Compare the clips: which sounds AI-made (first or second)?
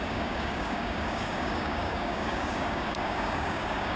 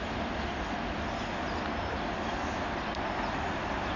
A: first